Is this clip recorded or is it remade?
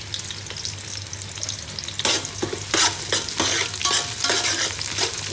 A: recorded